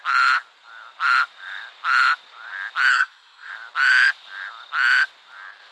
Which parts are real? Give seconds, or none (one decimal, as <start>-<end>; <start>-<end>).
0.0-2.9; 3.5-5.7